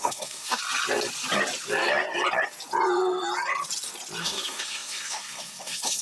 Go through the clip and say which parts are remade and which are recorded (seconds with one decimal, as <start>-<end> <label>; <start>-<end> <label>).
0.0-0.6 remade; 0.6-4.2 recorded; 4.2-6.0 remade